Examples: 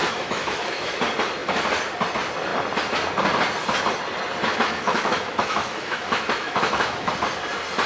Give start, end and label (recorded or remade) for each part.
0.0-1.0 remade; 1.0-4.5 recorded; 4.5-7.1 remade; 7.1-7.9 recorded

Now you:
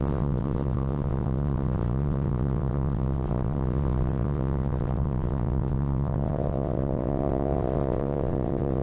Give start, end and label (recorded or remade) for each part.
0.0-8.8 remade

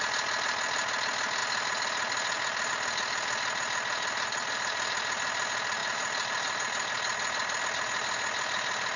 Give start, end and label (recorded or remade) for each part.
0.0-9.0 recorded

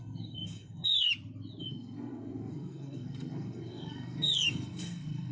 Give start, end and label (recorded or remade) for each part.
0.0-1.1 remade; 1.1-1.6 recorded; 1.6-5.3 remade

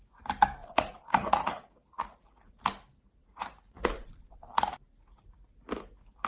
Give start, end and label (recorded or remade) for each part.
0.0-0.6 recorded; 0.6-2.6 remade; 2.6-3.2 recorded; 3.2-4.3 remade; 4.3-6.3 recorded

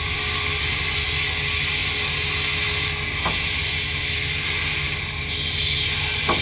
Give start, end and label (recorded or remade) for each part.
0.0-6.4 recorded

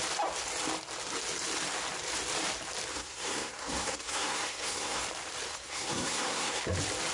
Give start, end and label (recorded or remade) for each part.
0.0-2.9 recorded; 2.9-5.0 remade; 5.0-5.5 recorded; 5.5-6.6 remade; 6.6-7.1 recorded